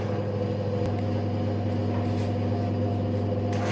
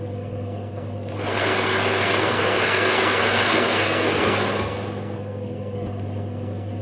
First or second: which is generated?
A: second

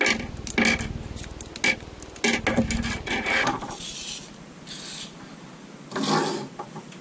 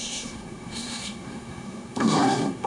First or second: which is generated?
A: second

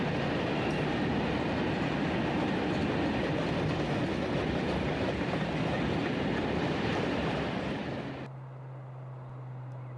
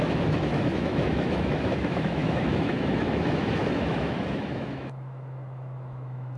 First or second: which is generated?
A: second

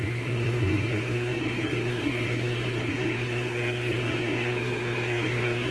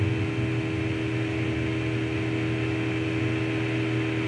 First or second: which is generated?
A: first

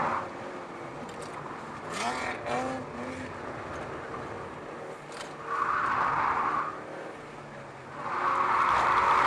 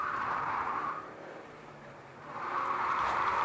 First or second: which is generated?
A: second